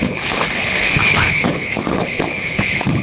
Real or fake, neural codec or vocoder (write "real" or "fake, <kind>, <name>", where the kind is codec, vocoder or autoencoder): fake, codec, HILCodec